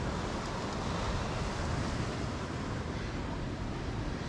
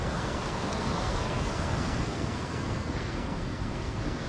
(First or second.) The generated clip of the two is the second